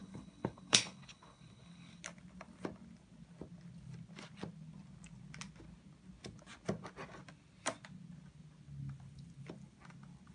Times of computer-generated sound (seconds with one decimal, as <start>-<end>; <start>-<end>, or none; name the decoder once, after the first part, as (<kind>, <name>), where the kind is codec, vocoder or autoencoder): 0.0-2.0 (codec, HILCodec)